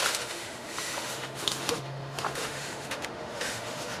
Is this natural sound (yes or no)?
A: no